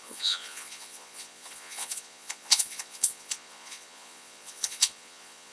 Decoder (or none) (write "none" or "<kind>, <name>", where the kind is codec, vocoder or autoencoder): vocoder, Vocos